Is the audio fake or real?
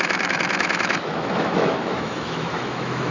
fake